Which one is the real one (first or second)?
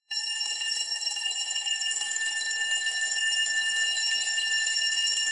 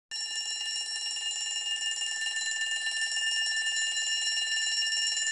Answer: second